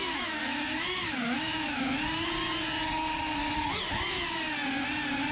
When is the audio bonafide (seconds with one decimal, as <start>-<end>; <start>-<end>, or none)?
2.3-5.3